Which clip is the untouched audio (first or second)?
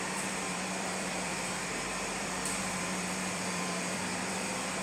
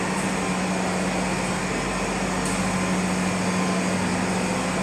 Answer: second